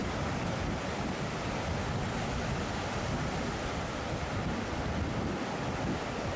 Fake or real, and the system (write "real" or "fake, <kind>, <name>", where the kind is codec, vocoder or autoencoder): real